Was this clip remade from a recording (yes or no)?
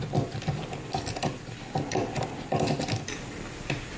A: no